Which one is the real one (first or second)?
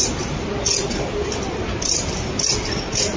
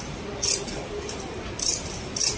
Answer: first